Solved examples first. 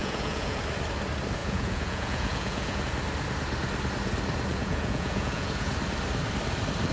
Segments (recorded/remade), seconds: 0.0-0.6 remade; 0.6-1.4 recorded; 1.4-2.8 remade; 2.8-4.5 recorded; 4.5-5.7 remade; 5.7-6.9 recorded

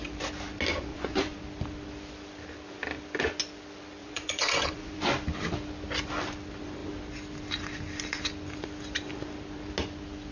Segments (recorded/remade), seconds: 0.0-0.9 recorded; 0.9-1.4 remade; 1.4-4.0 recorded; 4.0-5.0 remade; 5.0-10.3 recorded

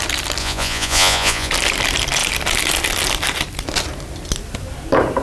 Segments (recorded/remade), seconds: 0.0-0.4 recorded; 0.4-1.5 remade; 1.5-5.2 recorded

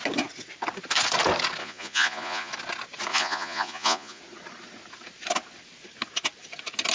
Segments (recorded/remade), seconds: 0.0-1.6 recorded; 1.6-2.5 remade; 2.5-3.1 recorded; 3.1-4.2 remade; 4.2-6.9 recorded

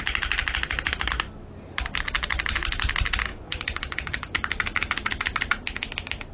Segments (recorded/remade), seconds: 0.0-3.3 recorded; 3.3-4.3 remade; 4.3-6.3 recorded

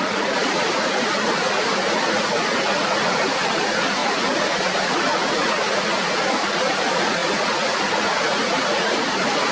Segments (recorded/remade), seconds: 0.0-9.5 remade

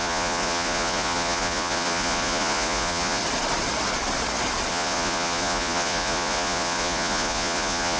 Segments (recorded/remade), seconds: 0.0-3.2 remade; 3.2-4.7 recorded; 4.7-8.0 remade

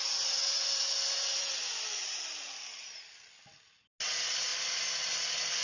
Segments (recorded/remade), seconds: 0.0-5.6 recorded